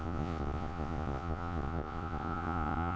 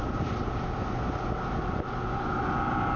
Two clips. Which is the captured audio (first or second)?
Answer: second